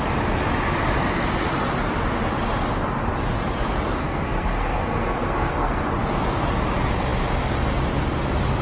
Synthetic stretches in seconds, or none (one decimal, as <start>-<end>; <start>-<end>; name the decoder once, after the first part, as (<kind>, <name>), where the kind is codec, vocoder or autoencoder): 4.0-5.9 (codec, SNAC)